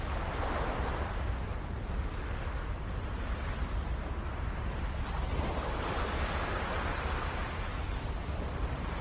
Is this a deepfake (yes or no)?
no